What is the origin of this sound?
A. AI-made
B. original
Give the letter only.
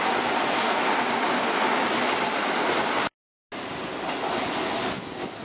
B